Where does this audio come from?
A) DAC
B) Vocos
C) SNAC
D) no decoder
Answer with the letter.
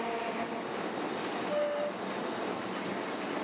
D